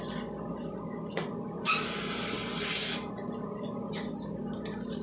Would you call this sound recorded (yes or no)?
yes